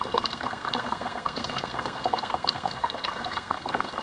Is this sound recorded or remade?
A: remade